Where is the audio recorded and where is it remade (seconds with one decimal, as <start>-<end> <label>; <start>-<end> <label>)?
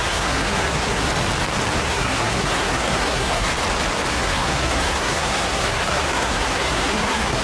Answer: 0.0-1.1 remade; 1.1-1.8 recorded; 1.8-3.5 remade; 3.5-4.1 recorded; 4.1-7.4 remade